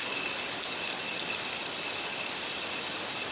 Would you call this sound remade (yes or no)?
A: no